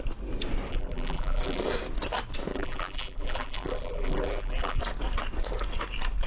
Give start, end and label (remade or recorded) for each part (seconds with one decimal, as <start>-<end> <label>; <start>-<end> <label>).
0.0-0.7 recorded; 0.7-1.6 remade; 1.6-2.5 recorded; 2.5-4.8 remade; 4.8-6.3 recorded